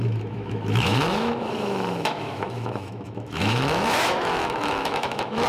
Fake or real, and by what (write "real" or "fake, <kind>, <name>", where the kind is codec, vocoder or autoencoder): fake, autoencoder, DAC-VAE